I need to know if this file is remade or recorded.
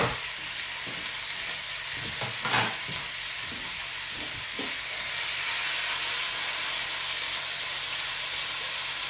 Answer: recorded